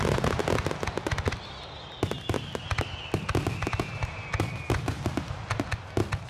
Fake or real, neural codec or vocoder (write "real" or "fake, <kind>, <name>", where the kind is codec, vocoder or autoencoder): real